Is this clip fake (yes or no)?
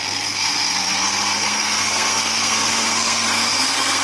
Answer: yes